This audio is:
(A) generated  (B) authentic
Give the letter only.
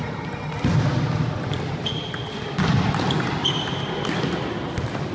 B